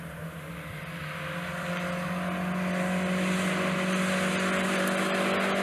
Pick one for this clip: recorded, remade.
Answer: recorded